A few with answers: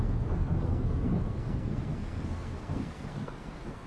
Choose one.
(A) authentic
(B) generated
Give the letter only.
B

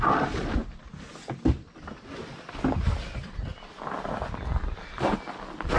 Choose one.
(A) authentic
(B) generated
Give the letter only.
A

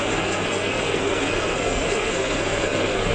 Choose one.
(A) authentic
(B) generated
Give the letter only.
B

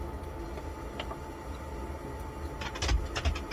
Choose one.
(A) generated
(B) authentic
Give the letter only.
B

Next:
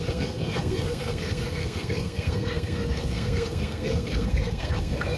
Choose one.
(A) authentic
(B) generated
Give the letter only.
B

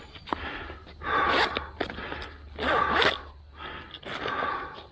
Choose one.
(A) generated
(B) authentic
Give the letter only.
B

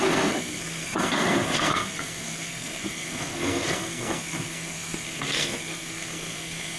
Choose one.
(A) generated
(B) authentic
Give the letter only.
A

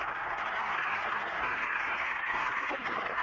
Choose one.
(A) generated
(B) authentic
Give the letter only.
A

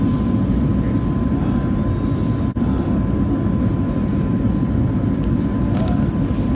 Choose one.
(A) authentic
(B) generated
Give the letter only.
A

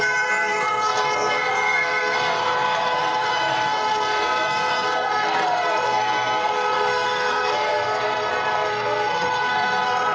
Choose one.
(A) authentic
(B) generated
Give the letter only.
B